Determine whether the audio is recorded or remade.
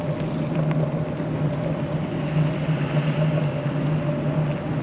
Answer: recorded